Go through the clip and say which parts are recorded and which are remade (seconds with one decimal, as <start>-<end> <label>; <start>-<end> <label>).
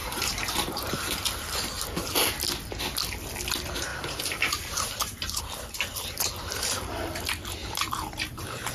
0.0-1.1 remade; 1.1-3.9 recorded; 3.9-5.4 remade; 5.4-7.6 recorded; 7.6-8.7 remade